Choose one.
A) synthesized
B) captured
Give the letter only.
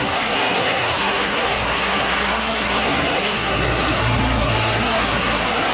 A